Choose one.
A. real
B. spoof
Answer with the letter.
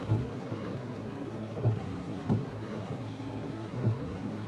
B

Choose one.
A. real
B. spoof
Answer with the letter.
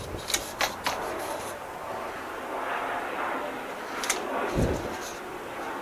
A